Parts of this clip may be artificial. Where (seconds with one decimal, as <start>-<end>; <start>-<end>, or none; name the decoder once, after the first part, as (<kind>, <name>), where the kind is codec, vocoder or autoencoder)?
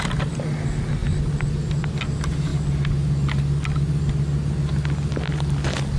none